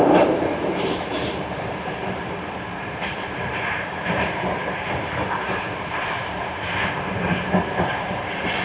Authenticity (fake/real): fake